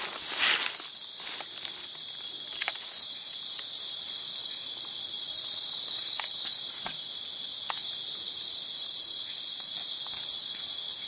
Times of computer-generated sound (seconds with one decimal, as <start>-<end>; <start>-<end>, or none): 2.6-3.8